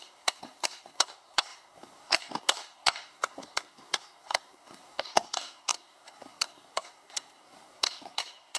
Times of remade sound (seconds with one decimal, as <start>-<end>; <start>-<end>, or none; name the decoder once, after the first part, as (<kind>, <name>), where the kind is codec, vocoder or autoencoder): 0.0-8.6 (codec, SNAC)